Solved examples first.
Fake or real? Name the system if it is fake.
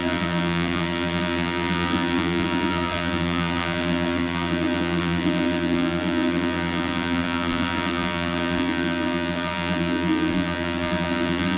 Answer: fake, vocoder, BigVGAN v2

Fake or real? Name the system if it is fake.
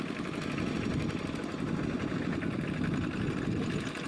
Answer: real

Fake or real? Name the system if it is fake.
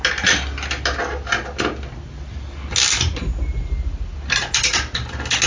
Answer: real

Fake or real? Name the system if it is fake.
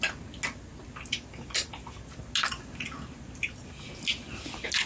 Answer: real